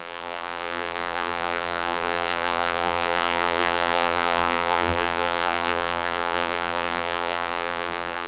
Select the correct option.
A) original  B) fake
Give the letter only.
B